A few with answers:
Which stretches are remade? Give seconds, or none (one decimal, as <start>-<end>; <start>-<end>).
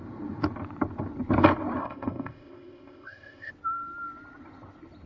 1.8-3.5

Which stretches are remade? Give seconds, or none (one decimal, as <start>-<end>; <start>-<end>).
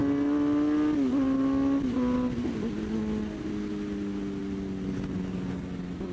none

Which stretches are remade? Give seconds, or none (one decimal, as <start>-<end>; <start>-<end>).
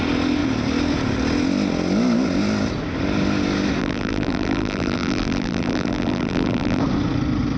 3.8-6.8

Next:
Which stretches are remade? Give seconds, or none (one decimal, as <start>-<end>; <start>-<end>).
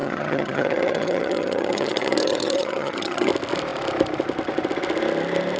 0.0-3.3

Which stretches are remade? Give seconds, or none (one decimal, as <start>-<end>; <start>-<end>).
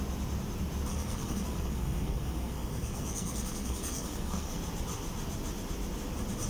0.9-4.6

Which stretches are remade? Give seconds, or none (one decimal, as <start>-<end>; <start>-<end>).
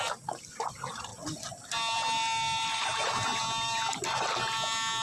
none